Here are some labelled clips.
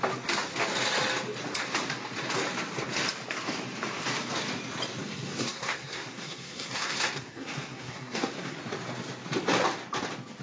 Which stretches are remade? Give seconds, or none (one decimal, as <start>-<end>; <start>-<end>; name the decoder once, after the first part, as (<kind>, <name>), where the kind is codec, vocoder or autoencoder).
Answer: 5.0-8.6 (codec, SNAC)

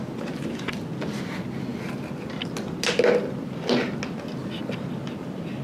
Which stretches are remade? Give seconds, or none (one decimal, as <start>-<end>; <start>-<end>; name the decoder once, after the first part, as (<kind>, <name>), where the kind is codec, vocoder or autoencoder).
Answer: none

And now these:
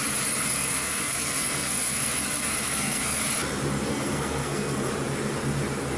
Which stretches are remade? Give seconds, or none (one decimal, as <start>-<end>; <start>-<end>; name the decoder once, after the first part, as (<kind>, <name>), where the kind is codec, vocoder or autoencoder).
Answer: 0.6-3.2 (codec, SNAC); 3.9-4.9